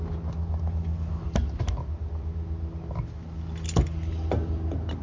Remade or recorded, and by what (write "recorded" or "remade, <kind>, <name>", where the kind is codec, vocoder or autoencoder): recorded